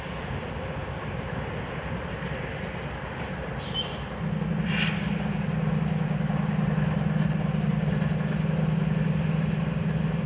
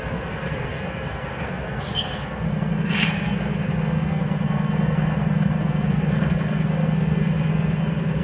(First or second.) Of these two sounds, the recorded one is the first